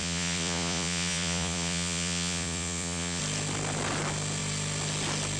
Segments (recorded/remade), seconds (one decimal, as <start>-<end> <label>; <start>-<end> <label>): 0.0-3.2 remade; 3.2-5.4 recorded